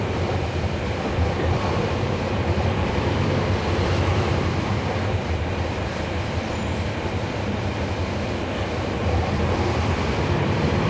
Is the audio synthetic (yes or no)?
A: yes